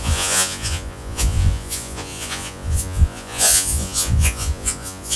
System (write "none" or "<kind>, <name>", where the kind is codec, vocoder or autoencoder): vocoder, Vocos